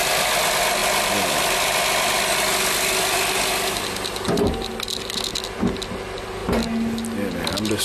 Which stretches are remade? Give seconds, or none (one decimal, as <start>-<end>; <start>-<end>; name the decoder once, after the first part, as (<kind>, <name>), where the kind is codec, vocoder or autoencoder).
none